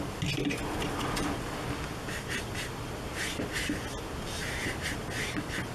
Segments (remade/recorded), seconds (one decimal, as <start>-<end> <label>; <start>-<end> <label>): 0.0-5.7 recorded